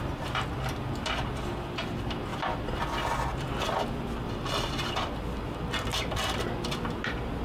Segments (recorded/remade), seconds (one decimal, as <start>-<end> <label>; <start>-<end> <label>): 0.0-7.4 recorded